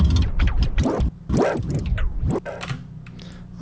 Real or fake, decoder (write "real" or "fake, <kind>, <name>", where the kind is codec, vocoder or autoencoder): real